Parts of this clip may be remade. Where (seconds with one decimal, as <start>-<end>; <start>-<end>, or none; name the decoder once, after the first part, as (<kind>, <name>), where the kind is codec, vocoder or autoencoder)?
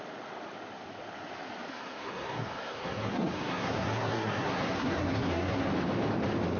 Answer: 1.7-5.7 (codec, SNAC)